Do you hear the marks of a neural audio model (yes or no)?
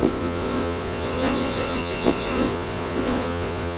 yes